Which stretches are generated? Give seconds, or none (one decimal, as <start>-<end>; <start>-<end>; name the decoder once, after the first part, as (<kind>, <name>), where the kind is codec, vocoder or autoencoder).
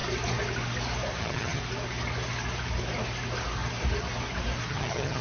1.2-1.6 (vocoder, HiFi-GAN); 4.7-5.2